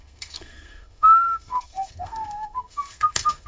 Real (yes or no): no